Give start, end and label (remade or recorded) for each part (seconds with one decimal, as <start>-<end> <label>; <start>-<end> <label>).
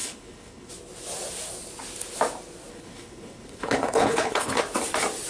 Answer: 0.0-0.7 remade; 0.7-2.7 recorded; 2.7-4.6 remade; 4.6-5.3 recorded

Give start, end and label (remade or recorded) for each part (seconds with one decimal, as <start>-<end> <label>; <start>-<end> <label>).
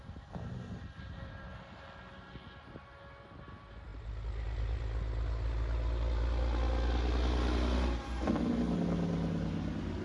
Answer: 0.0-10.0 recorded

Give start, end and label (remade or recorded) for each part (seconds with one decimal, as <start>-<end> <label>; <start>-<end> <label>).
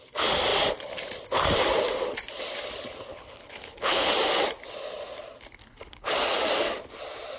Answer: 0.0-3.1 recorded; 3.1-4.1 remade; 4.1-5.6 recorded; 5.6-6.1 remade; 6.1-7.4 recorded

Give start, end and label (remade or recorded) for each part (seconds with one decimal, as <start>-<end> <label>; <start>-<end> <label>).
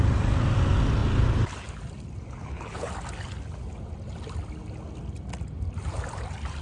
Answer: 0.0-2.4 recorded; 2.4-2.9 remade; 2.9-6.6 recorded